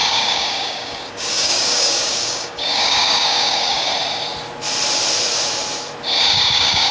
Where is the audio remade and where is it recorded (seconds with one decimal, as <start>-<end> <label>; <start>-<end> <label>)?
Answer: 0.0-3.9 remade; 3.9-6.2 recorded; 6.2-6.9 remade

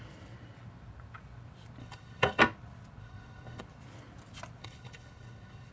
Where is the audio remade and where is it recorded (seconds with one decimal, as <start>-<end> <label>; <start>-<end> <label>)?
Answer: 0.0-1.8 recorded; 1.8-2.4 remade; 2.4-3.0 recorded; 3.0-3.6 remade; 3.6-4.6 recorded; 4.6-5.7 remade